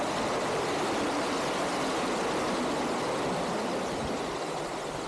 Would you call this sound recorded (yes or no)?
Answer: yes